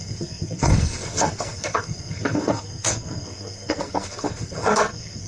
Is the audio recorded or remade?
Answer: remade